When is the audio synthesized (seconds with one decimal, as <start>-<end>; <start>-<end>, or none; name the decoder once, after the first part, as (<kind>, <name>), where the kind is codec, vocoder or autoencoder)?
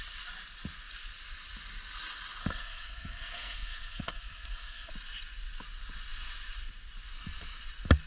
2.4-4.9 (codec, SNAC)